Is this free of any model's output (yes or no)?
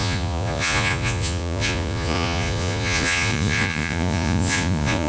no